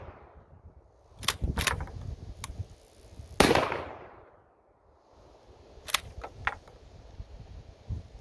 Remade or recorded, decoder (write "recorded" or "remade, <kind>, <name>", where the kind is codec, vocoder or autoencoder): recorded